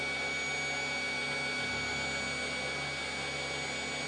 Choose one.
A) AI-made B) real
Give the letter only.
B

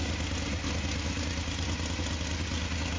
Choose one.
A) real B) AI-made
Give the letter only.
A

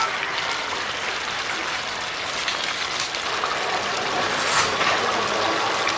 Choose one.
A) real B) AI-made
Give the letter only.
A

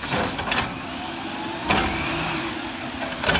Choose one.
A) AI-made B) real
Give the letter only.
B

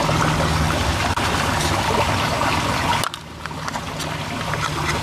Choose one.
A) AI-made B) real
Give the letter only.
B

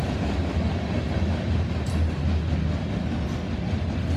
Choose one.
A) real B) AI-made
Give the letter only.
A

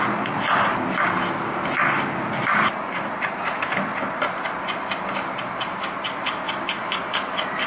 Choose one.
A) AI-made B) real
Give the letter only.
B